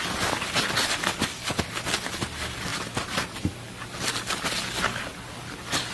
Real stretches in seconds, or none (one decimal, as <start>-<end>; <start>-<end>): 0.0-5.9